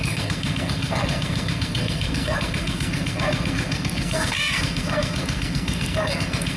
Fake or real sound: fake